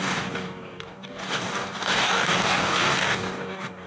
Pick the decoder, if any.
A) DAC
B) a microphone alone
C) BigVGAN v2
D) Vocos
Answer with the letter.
A